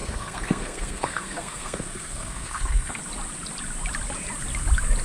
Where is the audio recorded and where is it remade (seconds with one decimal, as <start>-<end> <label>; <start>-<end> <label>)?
0.0-3.0 remade; 3.0-5.0 recorded